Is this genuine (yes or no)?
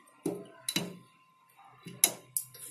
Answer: yes